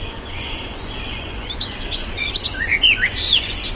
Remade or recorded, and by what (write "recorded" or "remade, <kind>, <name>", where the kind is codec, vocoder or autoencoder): remade, vocoder, Vocos